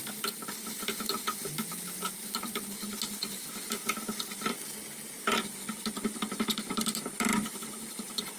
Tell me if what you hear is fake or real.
real